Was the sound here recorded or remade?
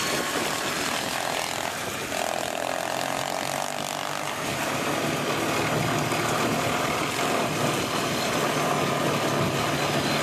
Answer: recorded